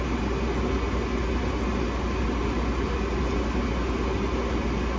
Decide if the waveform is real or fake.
real